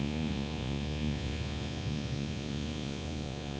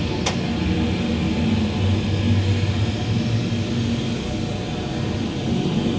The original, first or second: second